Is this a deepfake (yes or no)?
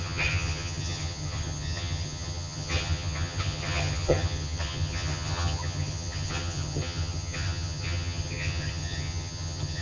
yes